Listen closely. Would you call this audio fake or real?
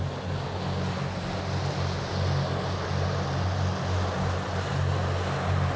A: real